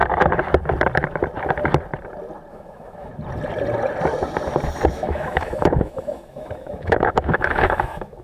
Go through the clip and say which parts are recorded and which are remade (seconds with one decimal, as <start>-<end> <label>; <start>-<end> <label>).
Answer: 0.0-2.5 recorded; 2.5-3.1 remade; 3.1-4.9 recorded; 4.9-8.2 remade